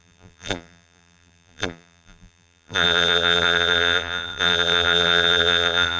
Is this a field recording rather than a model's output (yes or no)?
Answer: no